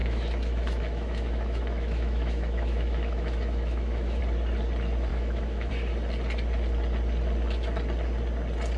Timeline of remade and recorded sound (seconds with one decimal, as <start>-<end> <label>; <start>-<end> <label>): 0.0-4.2 remade; 4.2-5.1 recorded; 5.1-5.7 remade; 5.7-8.8 recorded